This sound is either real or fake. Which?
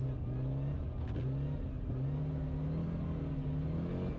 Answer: real